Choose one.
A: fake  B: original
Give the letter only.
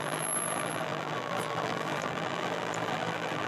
A